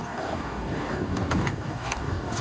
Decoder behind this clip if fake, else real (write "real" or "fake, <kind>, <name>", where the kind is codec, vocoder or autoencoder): fake, codec, DAC